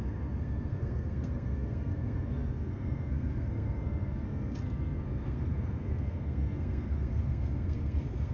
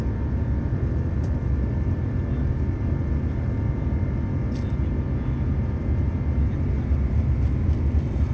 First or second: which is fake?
first